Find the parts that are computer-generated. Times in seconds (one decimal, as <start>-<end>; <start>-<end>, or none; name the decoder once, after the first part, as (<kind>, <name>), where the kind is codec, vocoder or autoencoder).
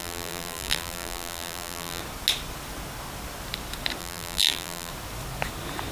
0.0-2.0 (vocoder, BigVGAN v2); 4.0-4.9